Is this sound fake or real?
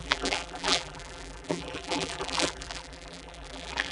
fake